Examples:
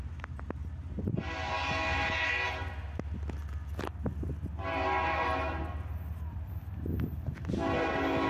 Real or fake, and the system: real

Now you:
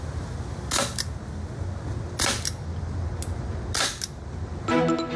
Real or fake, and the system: real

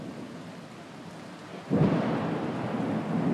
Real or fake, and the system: real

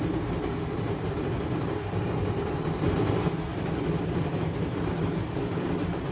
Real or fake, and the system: fake, vocoder, BigVGAN v2